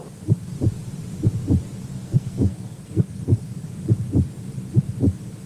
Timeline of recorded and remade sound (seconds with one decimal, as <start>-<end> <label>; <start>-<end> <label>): 0.0-1.9 recorded; 1.9-3.5 remade; 3.5-5.5 recorded